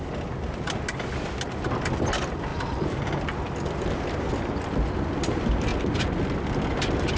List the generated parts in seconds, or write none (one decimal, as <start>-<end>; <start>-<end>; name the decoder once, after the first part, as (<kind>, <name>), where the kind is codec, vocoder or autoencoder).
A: none